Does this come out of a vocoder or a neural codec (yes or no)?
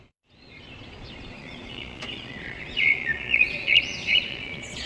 yes